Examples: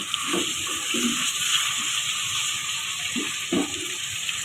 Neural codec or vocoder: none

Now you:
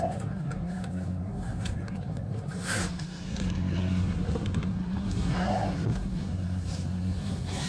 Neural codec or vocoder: codec, SNAC